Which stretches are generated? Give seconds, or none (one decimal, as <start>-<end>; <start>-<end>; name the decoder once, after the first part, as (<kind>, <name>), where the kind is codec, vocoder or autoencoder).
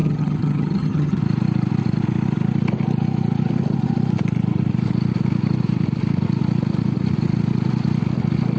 0.0-1.2 (vocoder, HiFi-GAN)